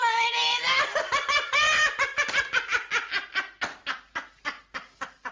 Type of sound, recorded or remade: recorded